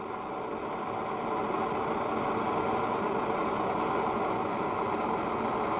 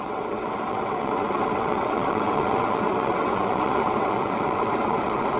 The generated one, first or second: second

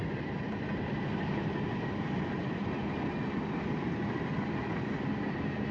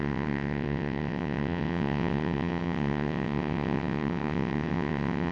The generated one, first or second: second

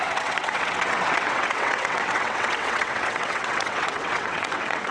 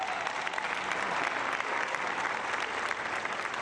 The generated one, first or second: first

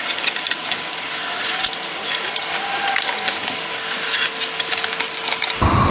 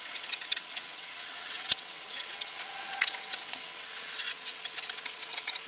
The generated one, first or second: second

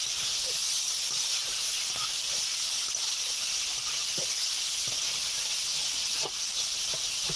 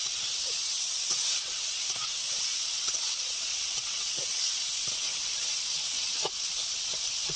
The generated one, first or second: second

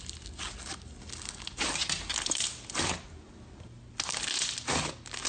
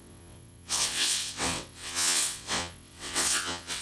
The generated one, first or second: second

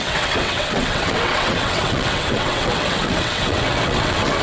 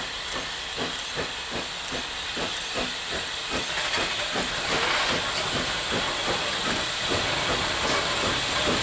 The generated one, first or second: first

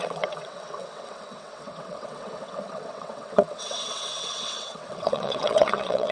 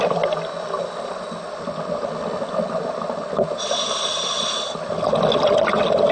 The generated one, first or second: first